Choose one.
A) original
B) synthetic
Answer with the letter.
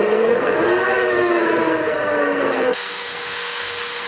B